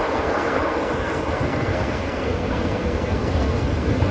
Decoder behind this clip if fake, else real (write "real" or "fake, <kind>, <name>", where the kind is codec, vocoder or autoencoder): fake, codec, SNAC